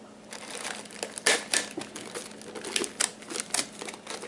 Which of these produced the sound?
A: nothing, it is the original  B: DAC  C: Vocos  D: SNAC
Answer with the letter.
A